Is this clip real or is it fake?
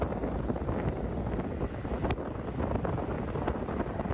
real